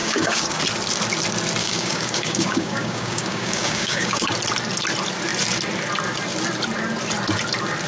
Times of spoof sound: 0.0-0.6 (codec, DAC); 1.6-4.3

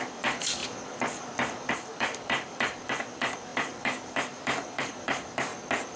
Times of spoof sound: 0.0-5.5 (codec, DAC)

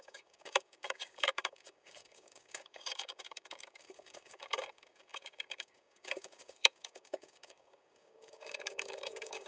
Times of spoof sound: 0.0-9.5 (codec, DAC)

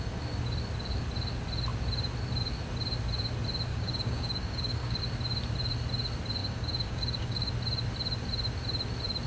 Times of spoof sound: 3.7-5.0 (codec, DAC); 6.4-7.5

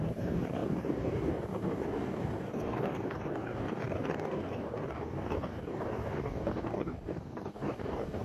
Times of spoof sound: 0.0-8.2 (codec, DAC)

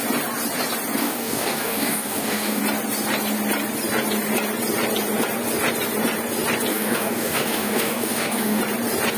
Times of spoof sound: 1.0-2.6 (codec, DAC); 6.7-8.6

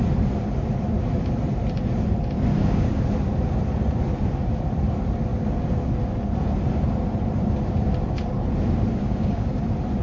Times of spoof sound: 2.5-3.0 (codec, DAC); 9.0-9.6